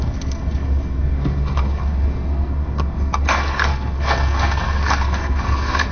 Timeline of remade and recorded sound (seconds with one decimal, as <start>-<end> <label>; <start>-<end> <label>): 0.0-5.9 remade